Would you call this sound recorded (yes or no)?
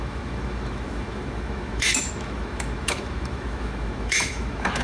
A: no